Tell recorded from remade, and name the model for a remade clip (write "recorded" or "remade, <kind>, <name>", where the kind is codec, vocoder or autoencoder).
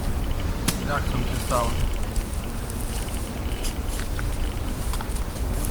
remade, vocoder, BigVGAN v2